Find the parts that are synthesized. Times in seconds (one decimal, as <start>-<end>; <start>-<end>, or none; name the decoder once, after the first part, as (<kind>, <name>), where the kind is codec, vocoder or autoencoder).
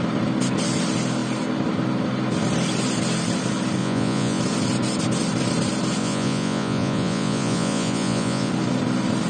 3.8-4.4 (vocoder, Vocos); 6.0-8.5